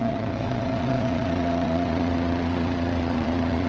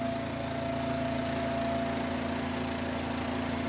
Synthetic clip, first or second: first